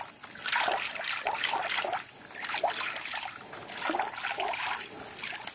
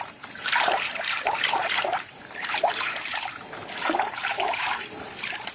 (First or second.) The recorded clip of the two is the first